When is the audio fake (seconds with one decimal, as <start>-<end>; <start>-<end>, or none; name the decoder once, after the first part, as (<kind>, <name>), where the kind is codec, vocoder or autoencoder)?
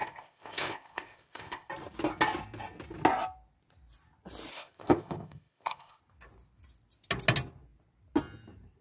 0.0-1.7 (codec, ZipCodec); 4.5-6.0